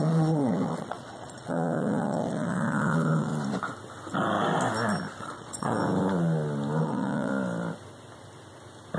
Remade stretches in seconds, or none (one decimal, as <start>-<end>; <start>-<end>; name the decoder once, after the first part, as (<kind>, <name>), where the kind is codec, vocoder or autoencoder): 0.0-3.3 (vocoder, Vocos); 5.2-5.8; 6.8-7.3